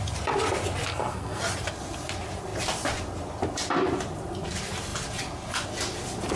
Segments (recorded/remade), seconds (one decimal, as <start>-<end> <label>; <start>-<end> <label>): 0.0-0.9 recorded; 0.9-1.4 remade; 1.4-6.4 recorded

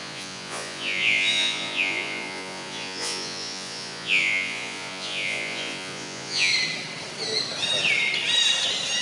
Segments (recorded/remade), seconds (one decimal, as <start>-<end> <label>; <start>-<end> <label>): 0.0-6.5 remade; 6.5-9.0 recorded

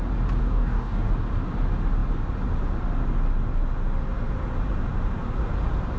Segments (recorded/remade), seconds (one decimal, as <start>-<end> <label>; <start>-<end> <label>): 0.0-0.4 recorded; 0.4-1.1 remade; 1.1-6.0 recorded

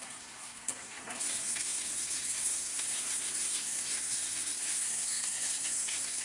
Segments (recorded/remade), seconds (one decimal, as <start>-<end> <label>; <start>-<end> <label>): 0.0-6.2 remade

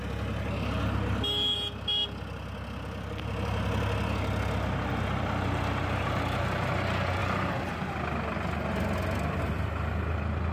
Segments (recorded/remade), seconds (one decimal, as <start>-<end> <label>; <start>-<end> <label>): 0.0-10.5 recorded

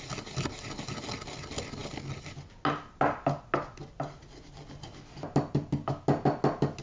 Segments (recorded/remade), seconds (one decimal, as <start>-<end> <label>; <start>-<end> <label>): 0.0-6.8 recorded

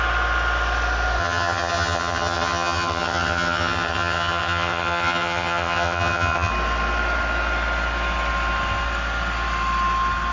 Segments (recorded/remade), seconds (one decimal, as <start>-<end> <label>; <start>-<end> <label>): 0.0-1.2 recorded; 1.2-6.5 remade; 6.5-10.3 recorded

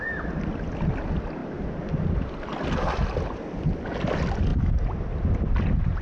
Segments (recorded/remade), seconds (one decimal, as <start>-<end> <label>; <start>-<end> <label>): 0.0-6.0 recorded